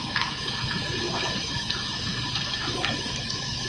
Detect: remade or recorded remade